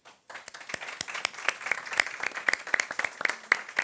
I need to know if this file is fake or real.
real